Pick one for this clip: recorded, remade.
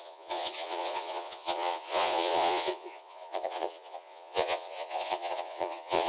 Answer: remade